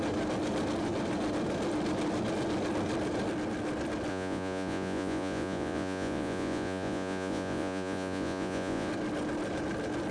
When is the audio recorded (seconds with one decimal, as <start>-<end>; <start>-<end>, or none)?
0.0-4.1; 8.9-10.1